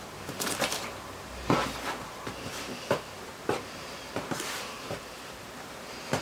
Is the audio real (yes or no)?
no